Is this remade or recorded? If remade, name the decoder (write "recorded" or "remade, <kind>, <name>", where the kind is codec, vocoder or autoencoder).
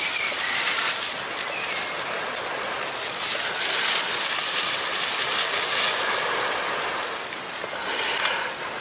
recorded